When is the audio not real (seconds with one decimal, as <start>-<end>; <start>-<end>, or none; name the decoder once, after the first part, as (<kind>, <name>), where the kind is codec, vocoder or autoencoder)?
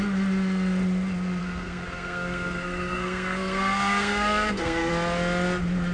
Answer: 1.4-4.9 (codec, SNAC)